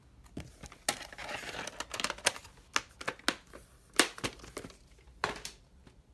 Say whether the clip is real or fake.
real